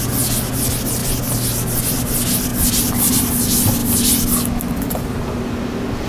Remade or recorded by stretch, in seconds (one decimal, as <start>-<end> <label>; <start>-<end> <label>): 0.0-6.1 recorded